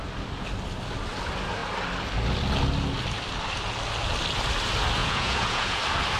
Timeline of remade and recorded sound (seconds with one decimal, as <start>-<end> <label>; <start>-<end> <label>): 0.0-5.0 recorded; 5.0-5.8 remade; 5.8-6.2 recorded